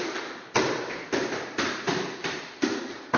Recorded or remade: recorded